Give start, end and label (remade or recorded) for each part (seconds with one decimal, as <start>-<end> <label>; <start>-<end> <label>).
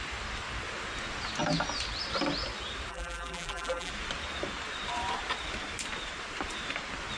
0.0-2.9 recorded; 2.9-3.9 remade; 3.9-7.2 recorded